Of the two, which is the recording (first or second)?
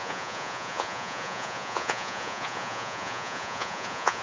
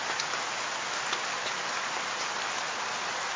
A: second